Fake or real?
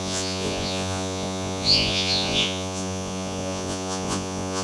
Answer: fake